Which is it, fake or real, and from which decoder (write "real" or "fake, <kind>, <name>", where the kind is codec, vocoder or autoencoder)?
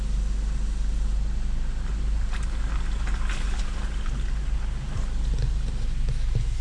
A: real